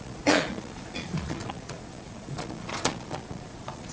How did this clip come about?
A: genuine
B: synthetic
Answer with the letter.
B